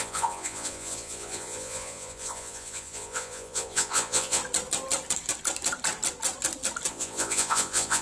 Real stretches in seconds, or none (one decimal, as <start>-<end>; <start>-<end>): 4.4-6.9